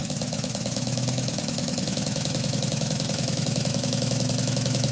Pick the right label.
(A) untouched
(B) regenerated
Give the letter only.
B